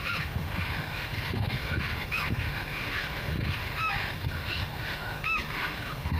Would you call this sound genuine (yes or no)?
no